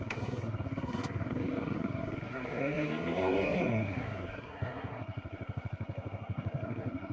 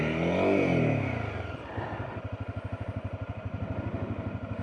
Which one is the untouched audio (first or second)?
second